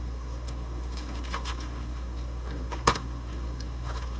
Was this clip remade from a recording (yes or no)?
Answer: yes